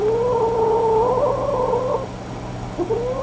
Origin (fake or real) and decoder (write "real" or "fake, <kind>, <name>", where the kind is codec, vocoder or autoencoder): real